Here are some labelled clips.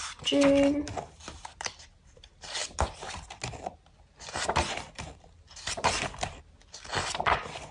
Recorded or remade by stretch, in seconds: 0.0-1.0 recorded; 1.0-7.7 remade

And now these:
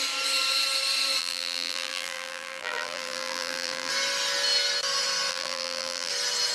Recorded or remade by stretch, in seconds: 0.0-1.2 recorded; 1.2-3.9 remade; 3.9-5.3 recorded; 5.3-6.1 remade; 6.1-6.5 recorded

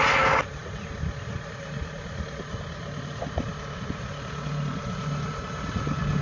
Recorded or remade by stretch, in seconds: 0.0-6.2 recorded